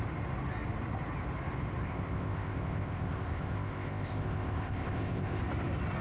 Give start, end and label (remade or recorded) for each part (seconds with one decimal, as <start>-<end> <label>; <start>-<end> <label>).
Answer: 0.0-1.8 recorded; 1.8-5.4 remade; 5.4-6.0 recorded

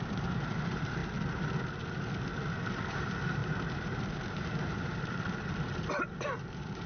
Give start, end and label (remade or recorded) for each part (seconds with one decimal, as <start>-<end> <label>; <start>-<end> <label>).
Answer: 0.0-1.0 remade; 1.0-2.9 recorded; 2.9-6.9 remade

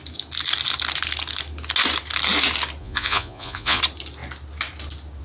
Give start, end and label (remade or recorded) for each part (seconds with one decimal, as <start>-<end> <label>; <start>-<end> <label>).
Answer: 0.0-2.8 recorded; 2.8-3.8 remade; 3.8-5.2 recorded

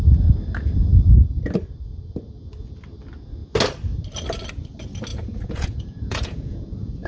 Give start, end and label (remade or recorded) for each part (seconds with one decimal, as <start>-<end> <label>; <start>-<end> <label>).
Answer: 0.0-5.1 recorded; 5.1-7.1 remade

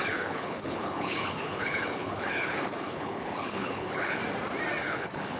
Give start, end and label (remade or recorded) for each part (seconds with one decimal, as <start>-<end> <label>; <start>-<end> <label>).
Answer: 0.0-4.2 remade; 4.2-4.8 recorded; 4.8-5.4 remade

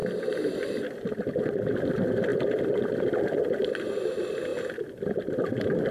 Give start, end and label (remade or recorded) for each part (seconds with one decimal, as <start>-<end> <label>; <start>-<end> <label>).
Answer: 0.0-5.9 recorded

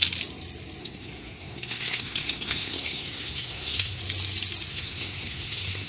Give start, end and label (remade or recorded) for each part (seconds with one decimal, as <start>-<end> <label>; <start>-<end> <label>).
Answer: 0.0-0.8 recorded; 0.8-4.0 remade; 4.0-4.7 recorded; 4.7-5.9 remade